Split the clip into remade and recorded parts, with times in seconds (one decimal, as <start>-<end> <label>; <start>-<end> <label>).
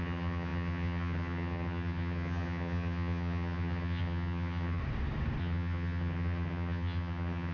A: 0.0-4.8 remade; 4.8-5.4 recorded; 5.4-7.5 remade